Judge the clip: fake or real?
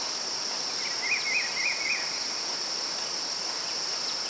real